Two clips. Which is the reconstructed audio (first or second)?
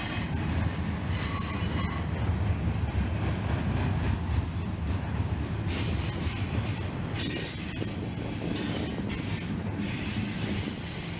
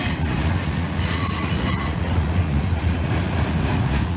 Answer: second